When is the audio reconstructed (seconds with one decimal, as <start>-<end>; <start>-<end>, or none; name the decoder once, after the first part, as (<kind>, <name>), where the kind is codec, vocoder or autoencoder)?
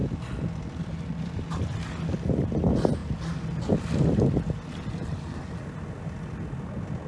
none